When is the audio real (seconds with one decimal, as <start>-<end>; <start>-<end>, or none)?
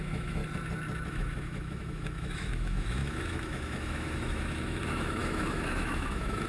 0.4-1.1